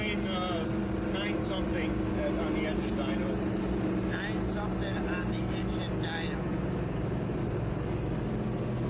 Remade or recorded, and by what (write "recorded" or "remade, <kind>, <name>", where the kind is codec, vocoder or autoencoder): recorded